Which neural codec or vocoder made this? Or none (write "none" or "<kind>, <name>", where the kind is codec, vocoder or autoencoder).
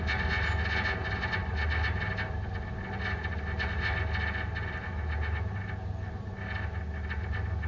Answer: none